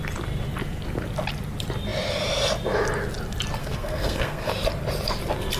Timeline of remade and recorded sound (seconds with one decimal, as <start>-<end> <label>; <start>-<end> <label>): 0.0-3.6 recorded; 3.6-4.5 remade; 4.5-5.6 recorded